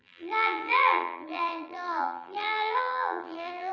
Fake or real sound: fake